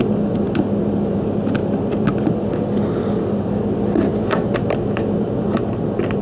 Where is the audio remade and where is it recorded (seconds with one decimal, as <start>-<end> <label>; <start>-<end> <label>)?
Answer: 0.0-6.2 remade